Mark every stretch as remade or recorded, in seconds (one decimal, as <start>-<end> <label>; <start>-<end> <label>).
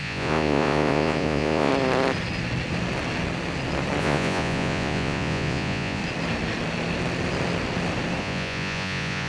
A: 0.0-1.7 remade; 1.7-4.0 recorded; 4.0-6.0 remade; 6.0-8.2 recorded; 8.2-9.3 remade